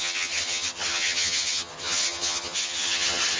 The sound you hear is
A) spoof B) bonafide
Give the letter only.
A